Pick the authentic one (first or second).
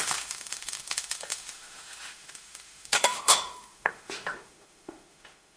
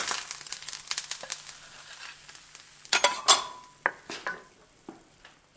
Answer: second